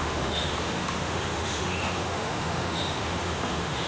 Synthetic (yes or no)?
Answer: yes